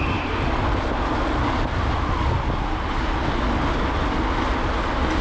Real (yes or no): yes